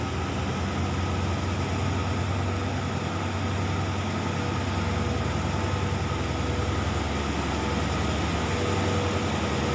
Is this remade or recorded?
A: recorded